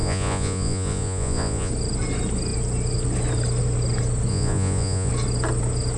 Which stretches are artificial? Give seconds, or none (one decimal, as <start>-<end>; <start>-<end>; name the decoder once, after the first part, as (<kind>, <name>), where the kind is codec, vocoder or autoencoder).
0.0-1.7 (vocoder, Vocos); 4.3-5.1